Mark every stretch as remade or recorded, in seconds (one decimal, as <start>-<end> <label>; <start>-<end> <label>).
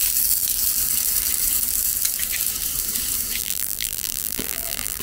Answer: 0.0-3.4 recorded; 3.4-5.0 remade